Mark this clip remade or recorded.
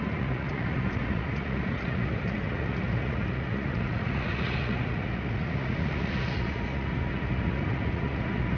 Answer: remade